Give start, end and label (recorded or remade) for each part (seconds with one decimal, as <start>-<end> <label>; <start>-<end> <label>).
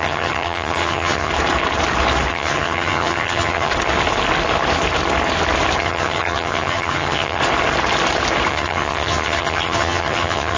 0.0-1.3 remade; 1.3-2.3 recorded; 2.3-3.7 remade; 3.7-5.8 recorded; 5.8-7.4 remade; 7.4-8.5 recorded; 8.5-10.6 remade